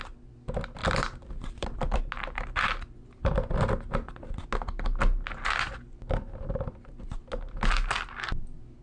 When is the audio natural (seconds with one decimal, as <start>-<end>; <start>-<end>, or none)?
0.0-0.8; 2.0-8.8